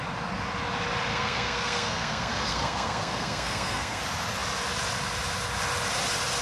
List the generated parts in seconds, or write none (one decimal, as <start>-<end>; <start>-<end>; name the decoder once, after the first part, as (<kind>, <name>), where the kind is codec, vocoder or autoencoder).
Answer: 1.1-4.0 (codec, SNAC)